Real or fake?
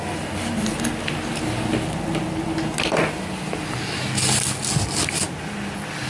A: real